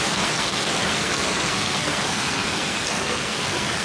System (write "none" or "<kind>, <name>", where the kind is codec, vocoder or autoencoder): codec, SNAC